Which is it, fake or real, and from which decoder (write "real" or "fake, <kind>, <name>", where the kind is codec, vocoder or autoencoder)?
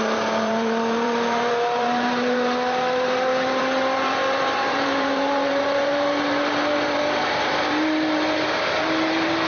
fake, vocoder, BigVGAN v2